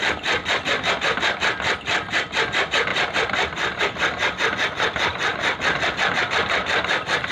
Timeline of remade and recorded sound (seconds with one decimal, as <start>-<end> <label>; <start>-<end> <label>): 0.0-7.3 remade